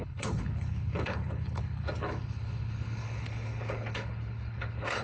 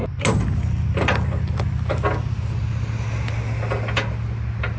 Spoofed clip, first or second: first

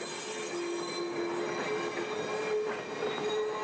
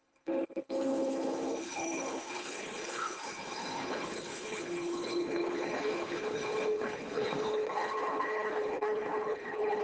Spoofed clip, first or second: second